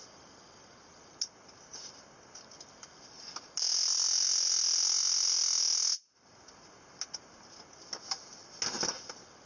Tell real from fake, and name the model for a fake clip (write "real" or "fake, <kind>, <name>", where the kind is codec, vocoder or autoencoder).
real